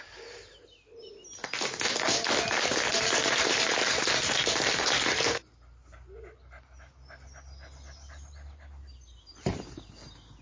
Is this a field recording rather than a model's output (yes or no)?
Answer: yes